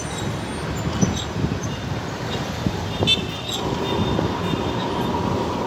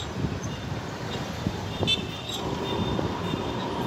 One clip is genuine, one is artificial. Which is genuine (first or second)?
first